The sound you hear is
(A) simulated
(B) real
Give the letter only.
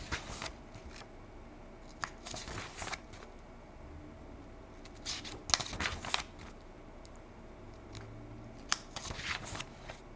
B